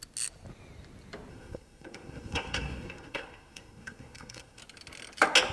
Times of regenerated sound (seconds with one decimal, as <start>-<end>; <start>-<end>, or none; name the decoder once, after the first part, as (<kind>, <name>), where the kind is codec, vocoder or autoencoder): 1.3-4.6 (codec, SNAC)